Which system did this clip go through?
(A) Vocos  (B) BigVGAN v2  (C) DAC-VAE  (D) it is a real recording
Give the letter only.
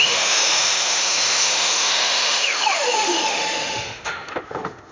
C